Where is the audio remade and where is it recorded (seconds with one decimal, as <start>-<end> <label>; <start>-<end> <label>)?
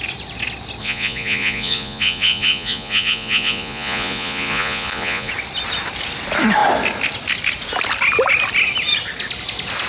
0.0-0.8 recorded; 0.8-5.3 remade; 5.3-9.9 recorded